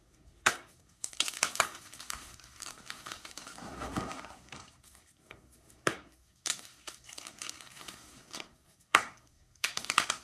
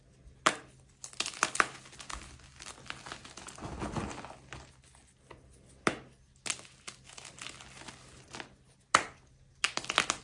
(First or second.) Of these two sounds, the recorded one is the second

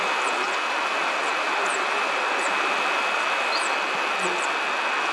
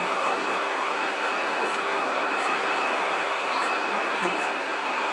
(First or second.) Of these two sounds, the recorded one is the first